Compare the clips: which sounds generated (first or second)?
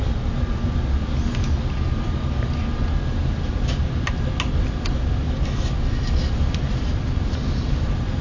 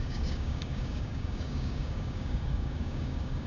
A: second